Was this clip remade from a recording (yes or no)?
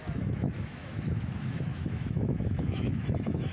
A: yes